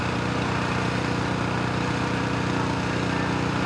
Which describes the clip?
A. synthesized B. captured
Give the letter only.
B